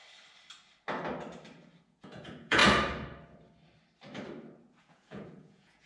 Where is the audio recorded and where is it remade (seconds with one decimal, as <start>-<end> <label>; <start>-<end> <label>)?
0.0-1.8 recorded; 1.8-2.6 remade; 2.6-4.8 recorded; 4.8-5.9 remade